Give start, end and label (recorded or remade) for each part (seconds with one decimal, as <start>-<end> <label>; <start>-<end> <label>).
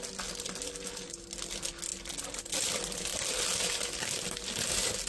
0.0-5.1 recorded